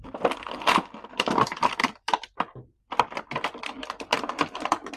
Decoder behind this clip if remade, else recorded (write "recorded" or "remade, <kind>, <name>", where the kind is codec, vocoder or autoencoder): remade, vocoder, BigVGAN v2